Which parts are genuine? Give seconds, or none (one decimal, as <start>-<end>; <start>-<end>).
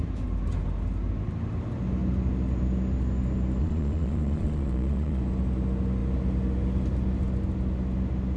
0.0-3.6; 5.2-8.4